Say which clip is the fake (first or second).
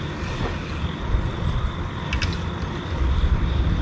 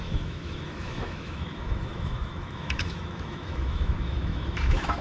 second